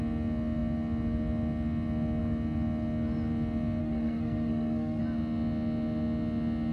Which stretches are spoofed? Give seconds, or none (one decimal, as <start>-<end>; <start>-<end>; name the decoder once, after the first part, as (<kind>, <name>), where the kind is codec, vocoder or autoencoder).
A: 3.8-5.0 (codec, SNAC)